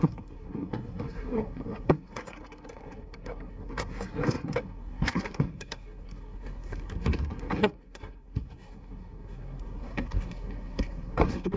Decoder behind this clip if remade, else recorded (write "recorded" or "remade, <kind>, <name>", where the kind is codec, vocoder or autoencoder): remade, codec, SNAC